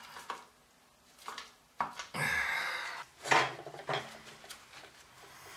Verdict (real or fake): real